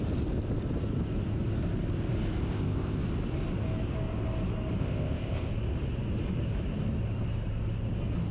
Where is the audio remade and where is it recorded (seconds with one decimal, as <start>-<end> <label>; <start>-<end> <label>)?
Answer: 0.0-2.4 recorded; 2.4-3.0 remade; 3.0-4.8 recorded; 4.8-5.5 remade; 5.5-8.3 recorded